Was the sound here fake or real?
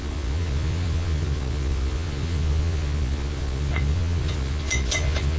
fake